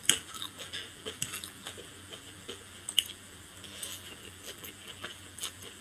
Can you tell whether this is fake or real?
fake